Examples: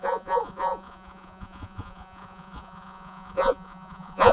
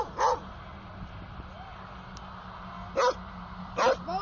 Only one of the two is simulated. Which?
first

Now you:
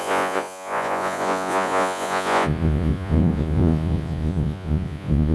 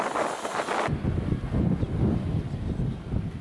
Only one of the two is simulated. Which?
first